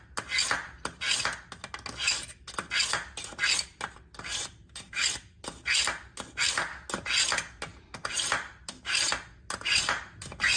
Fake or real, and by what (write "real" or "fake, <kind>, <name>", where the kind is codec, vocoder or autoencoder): real